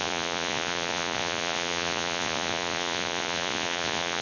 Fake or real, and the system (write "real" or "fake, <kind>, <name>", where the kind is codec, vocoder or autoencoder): fake, vocoder, Vocos